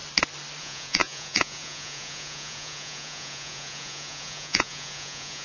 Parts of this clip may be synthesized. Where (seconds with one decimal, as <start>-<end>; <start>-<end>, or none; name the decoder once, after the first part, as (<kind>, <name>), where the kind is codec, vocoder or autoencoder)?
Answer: 0.6-5.4 (vocoder, Vocos)